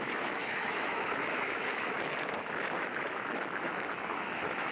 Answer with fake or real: fake